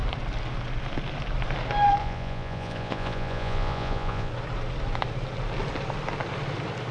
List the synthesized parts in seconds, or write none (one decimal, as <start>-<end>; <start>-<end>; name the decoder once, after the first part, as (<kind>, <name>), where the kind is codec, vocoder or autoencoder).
2.0-4.3 (vocoder, Vocos)